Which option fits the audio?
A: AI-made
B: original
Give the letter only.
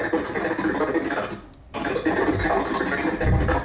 B